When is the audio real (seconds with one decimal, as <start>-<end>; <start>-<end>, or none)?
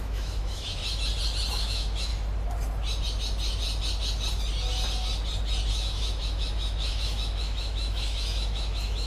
0.8-1.5; 2.1-5.7